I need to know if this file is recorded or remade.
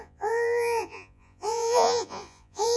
remade